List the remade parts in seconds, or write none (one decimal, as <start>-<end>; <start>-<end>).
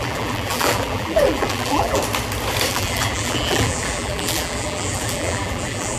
0.0-2.0; 2.7-6.0